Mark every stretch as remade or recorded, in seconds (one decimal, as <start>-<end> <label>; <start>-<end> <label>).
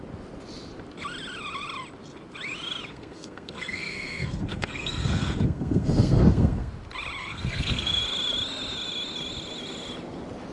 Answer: 0.0-2.9 recorded; 2.9-6.7 remade; 6.7-7.2 recorded; 7.2-8.0 remade; 8.0-10.5 recorded